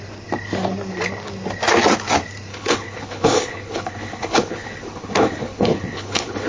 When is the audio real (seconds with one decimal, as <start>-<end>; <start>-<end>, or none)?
0.0-2.5